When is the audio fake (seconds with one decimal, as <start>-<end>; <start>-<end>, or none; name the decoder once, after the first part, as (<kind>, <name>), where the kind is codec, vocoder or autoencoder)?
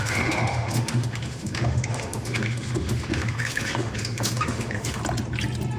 0.0-5.0 (autoencoder, DAC-VAE)